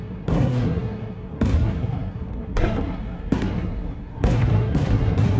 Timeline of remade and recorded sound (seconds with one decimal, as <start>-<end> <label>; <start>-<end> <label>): 0.0-5.4 remade